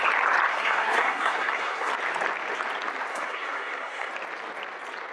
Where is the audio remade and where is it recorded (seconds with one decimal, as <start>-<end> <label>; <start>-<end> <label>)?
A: 0.0-0.5 recorded; 0.5-1.9 remade; 1.9-3.1 recorded; 3.1-4.1 remade; 4.1-5.1 recorded